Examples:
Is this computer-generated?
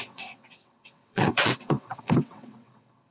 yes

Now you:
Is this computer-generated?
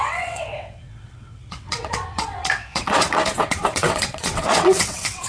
yes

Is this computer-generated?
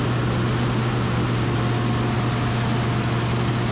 no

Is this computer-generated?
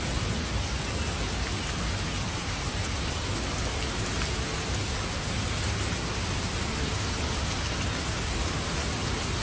no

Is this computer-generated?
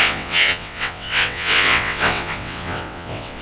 yes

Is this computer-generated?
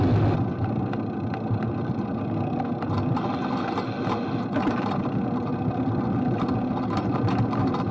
no